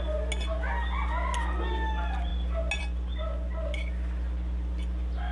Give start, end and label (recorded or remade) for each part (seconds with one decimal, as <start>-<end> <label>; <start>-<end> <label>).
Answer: 0.0-5.3 recorded